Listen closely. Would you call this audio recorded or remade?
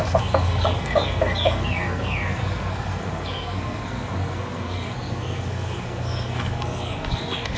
remade